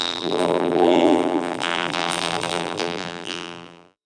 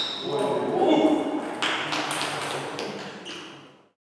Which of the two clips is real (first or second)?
second